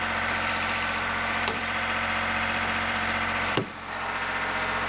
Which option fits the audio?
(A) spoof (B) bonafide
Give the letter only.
A